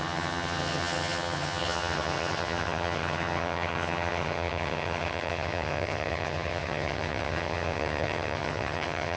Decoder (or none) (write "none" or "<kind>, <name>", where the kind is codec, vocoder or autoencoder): vocoder, HiFi-GAN